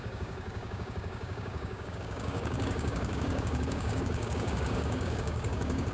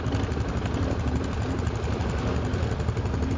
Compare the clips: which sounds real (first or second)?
second